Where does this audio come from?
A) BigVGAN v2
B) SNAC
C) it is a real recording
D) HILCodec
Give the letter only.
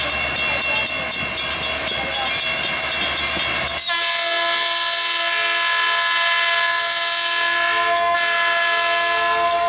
C